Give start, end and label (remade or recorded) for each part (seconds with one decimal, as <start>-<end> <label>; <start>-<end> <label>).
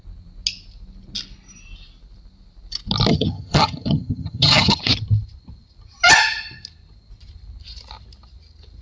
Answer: 0.0-3.1 recorded; 3.1-4.8 remade; 4.8-8.8 recorded